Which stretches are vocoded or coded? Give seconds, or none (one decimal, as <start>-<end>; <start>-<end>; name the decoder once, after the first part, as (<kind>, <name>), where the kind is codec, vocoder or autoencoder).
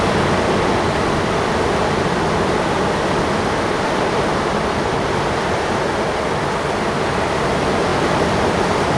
none